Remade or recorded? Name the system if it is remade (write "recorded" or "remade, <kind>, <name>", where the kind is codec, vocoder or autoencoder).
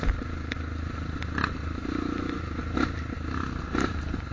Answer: recorded